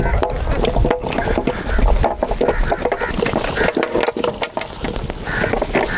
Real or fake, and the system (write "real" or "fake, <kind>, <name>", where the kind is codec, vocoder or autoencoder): real